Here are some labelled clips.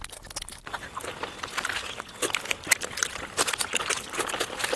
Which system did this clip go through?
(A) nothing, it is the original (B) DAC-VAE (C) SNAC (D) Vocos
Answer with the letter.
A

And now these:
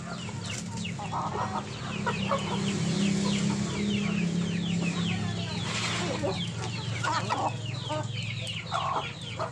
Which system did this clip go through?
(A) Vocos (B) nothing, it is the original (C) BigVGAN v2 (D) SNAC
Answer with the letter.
B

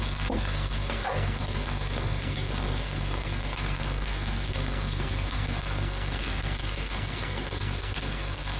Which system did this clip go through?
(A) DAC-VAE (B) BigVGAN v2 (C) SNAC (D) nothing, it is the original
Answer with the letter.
C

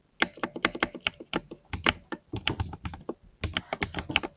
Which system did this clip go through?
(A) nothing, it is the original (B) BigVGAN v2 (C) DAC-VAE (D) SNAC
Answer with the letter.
A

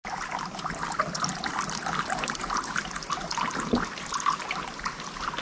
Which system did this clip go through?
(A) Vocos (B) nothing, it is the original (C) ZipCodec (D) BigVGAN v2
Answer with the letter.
B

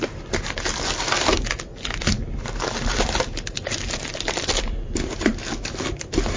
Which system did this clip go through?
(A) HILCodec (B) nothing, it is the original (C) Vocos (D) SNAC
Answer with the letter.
B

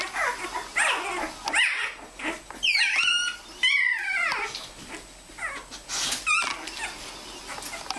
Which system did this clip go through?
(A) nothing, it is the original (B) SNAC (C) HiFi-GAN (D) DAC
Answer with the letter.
A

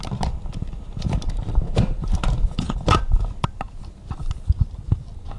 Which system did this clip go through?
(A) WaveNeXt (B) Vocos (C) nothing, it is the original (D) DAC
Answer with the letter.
C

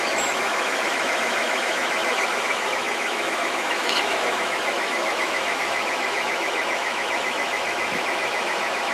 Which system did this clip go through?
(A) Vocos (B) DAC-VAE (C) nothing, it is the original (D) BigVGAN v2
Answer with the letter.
B